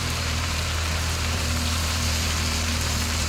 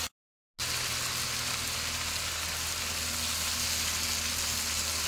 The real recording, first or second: second